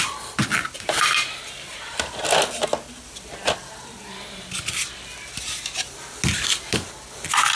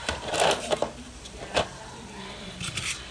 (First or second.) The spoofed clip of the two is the second